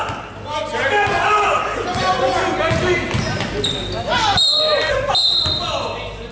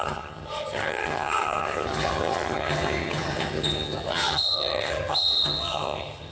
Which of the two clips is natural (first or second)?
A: first